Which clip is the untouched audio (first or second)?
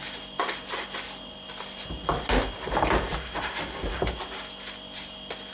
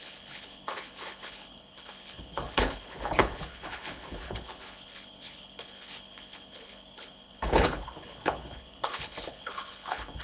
first